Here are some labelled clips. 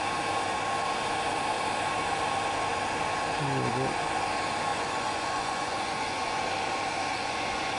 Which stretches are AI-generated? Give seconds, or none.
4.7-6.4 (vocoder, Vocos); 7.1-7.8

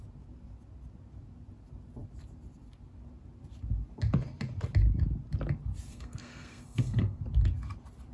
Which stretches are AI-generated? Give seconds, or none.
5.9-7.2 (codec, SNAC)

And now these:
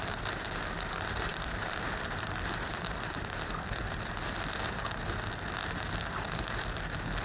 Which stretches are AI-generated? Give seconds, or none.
1.3-4.3 (vocoder, BigVGAN v2)